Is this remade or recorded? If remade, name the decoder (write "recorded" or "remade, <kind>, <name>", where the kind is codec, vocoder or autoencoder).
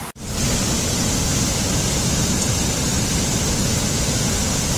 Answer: recorded